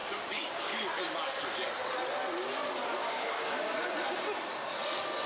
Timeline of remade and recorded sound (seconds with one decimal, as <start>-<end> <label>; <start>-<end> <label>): 0.0-0.9 remade; 0.9-3.0 recorded; 3.0-3.7 remade; 3.7-5.3 recorded